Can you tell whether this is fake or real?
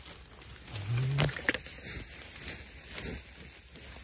real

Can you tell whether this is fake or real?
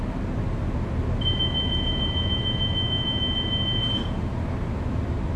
real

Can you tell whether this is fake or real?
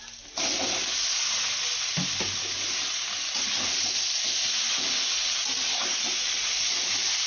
real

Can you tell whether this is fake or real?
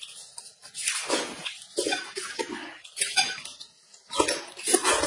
real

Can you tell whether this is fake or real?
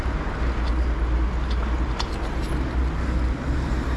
real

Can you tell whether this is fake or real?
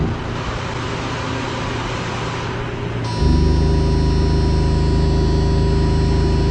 real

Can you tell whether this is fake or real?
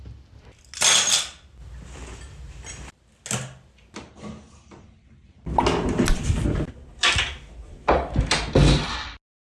real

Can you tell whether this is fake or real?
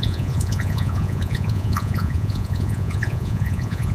fake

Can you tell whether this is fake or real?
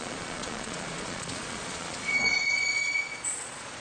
fake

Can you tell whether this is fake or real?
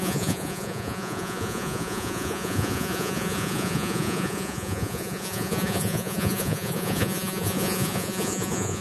fake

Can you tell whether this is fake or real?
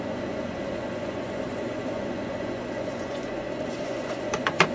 fake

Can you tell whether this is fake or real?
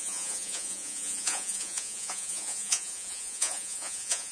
fake